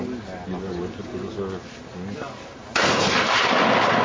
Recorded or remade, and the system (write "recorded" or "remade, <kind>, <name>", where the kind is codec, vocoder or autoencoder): recorded